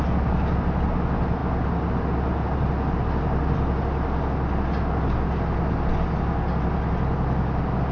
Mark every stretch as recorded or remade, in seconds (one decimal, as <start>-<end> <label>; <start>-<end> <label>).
0.0-7.9 recorded